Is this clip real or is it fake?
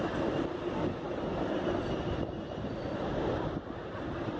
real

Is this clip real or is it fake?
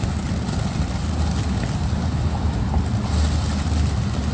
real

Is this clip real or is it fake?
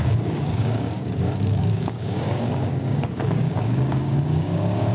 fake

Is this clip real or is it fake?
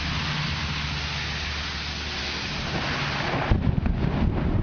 real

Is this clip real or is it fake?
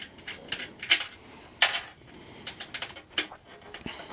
real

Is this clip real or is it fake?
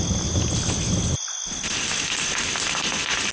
real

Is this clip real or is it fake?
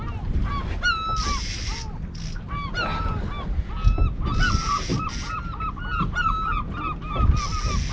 real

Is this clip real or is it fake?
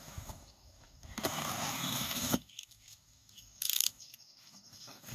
fake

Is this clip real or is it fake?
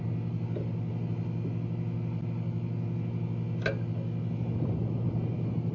real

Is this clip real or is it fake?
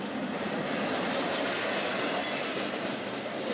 real